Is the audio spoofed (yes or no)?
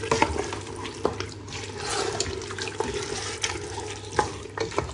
no